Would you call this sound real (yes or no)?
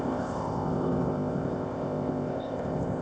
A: no